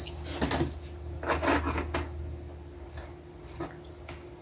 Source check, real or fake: real